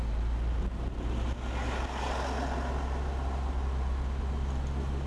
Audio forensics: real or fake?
real